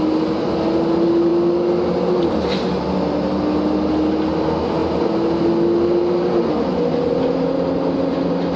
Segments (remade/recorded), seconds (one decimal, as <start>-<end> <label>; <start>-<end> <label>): 0.0-8.6 recorded